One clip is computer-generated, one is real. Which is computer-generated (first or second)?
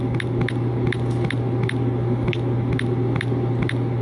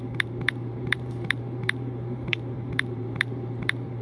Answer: second